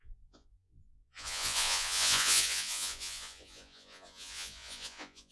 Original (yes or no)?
no